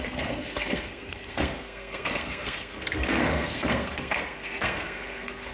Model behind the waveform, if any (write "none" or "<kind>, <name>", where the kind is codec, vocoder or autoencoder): codec, SNAC